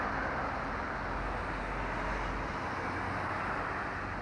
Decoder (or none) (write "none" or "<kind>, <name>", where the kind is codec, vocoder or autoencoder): none